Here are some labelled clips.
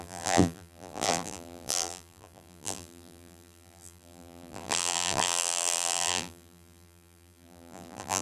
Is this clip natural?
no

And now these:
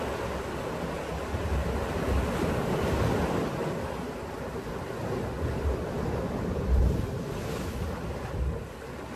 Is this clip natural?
yes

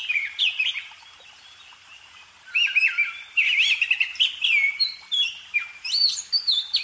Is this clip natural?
no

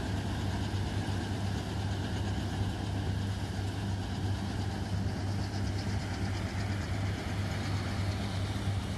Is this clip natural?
yes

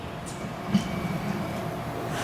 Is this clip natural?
no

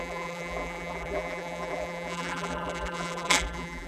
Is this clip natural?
no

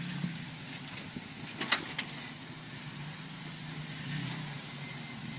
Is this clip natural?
yes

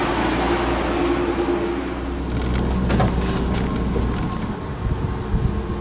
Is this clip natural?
yes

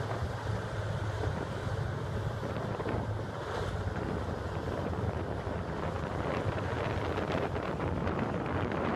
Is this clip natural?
no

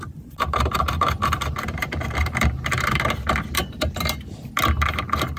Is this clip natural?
yes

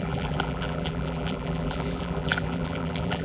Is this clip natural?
no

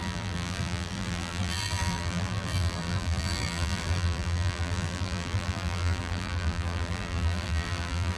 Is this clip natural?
no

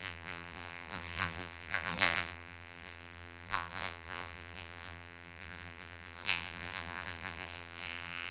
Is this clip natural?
no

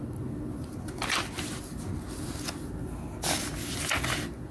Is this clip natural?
yes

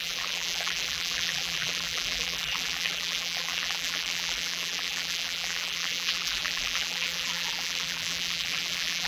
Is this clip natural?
no